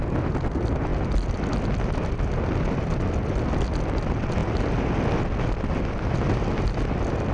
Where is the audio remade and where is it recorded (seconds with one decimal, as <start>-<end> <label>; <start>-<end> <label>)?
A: 0.0-7.3 recorded